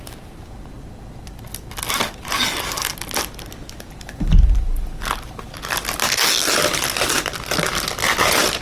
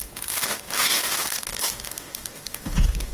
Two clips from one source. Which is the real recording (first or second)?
first